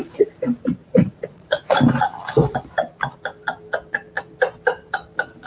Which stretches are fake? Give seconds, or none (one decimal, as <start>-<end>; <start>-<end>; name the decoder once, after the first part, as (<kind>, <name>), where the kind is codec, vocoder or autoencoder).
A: 0.8-1.7 (vocoder, Vocos)